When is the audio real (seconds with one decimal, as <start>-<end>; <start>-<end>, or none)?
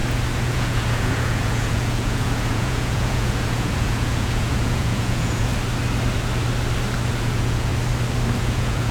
0.0-0.5; 5.5-7.2; 7.7-8.4